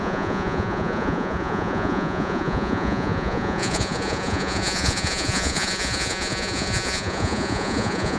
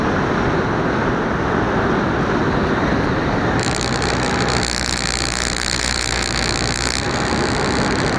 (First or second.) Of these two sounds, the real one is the second